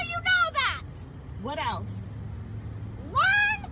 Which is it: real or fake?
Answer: real